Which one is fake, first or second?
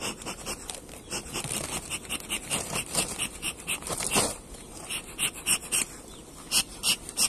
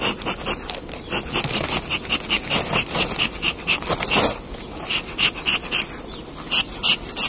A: first